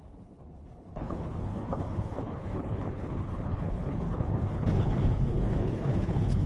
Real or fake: fake